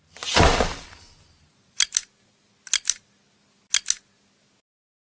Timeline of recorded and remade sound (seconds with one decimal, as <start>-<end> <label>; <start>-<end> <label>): 0.0-1.9 remade; 1.9-4.6 recorded; 4.6-5.2 remade